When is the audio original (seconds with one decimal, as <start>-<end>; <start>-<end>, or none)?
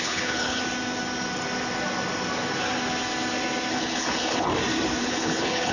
0.6-3.7; 4.5-5.0